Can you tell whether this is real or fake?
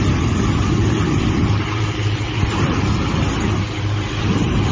fake